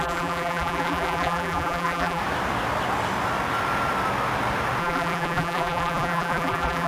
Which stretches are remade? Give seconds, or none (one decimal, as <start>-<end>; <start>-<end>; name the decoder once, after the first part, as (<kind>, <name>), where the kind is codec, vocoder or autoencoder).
0.0-2.2 (vocoder, BigVGAN v2); 4.8-6.9